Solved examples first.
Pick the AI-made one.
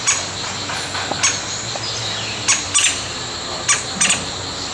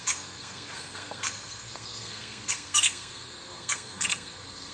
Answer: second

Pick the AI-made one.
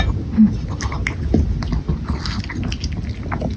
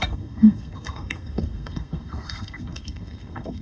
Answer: second